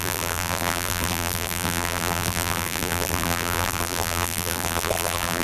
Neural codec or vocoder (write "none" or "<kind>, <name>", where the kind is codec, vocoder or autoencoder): vocoder, BigVGAN v2